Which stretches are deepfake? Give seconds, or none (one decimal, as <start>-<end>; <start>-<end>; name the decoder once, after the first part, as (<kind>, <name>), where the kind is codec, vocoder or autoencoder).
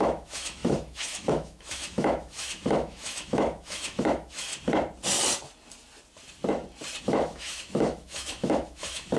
0.0-4.5 (autoencoder, DAC-VAE); 7.0-9.2